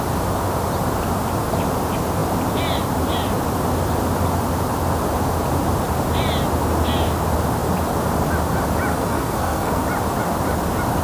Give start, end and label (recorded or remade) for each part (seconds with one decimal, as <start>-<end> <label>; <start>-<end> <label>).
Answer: 0.0-8.9 recorded; 8.9-9.8 remade; 9.8-11.0 recorded